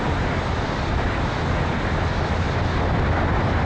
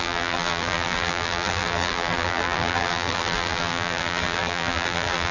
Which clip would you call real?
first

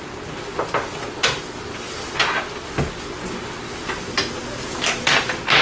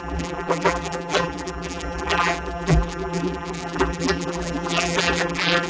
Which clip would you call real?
first